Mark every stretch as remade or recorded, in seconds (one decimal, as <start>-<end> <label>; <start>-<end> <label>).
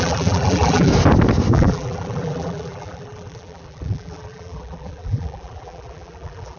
0.0-0.9 remade; 0.9-1.5 recorded; 1.5-6.6 remade